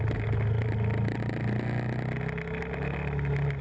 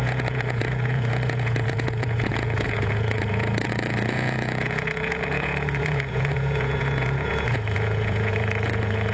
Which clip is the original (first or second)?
first